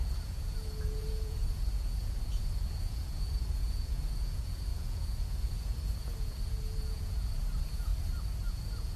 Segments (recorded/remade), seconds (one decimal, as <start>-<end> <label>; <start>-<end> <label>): 0.0-7.9 remade; 7.9-8.5 recorded; 8.5-9.0 remade